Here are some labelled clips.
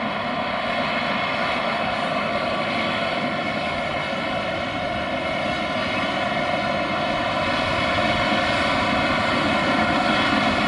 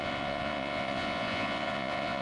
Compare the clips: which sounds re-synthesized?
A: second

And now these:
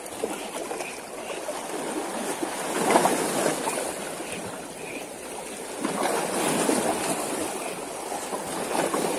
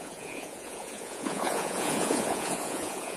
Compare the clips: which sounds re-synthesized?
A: second